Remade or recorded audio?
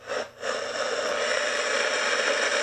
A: recorded